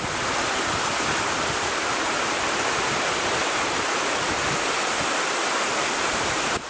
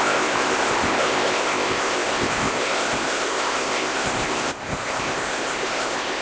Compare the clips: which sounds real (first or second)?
first